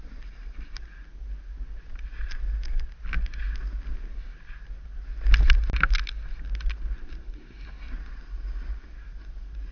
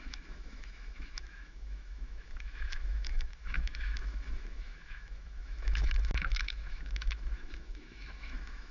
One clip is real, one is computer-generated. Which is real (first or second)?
first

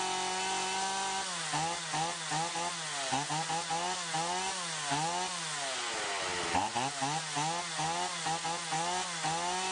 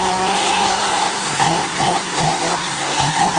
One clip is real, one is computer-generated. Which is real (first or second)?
first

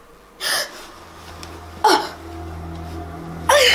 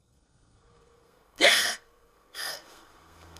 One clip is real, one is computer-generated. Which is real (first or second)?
first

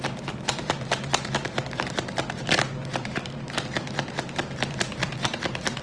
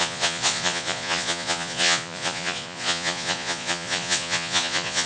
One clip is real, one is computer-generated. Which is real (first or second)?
first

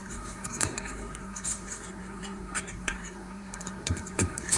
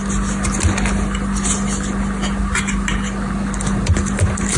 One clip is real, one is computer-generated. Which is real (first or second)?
second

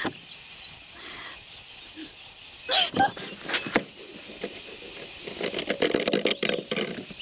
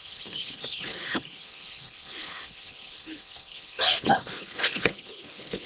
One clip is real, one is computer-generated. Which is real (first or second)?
first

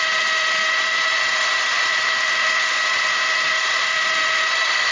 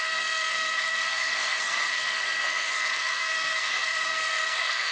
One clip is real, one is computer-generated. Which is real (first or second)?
first